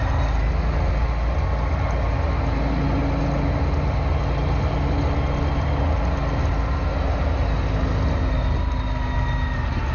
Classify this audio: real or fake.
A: real